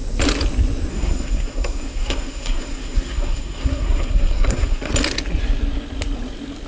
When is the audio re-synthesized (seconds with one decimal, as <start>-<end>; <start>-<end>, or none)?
0.9-4.9